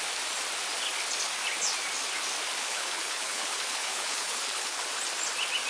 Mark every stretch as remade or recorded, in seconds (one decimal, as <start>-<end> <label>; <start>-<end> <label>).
0.0-2.6 recorded; 2.6-4.8 remade; 4.8-5.7 recorded